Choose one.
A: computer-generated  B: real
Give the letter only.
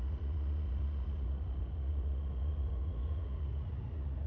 A